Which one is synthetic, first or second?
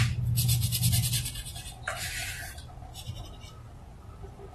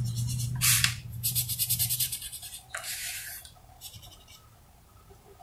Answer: second